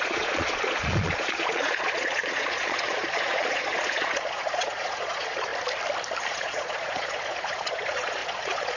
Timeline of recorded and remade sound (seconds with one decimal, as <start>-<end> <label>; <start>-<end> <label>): 0.0-5.5 remade; 5.5-6.3 recorded; 6.3-8.8 remade